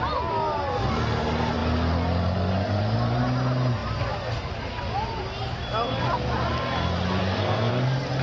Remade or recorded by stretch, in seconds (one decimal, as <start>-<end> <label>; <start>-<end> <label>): 0.0-7.2 recorded; 7.2-7.7 remade; 7.7-8.2 recorded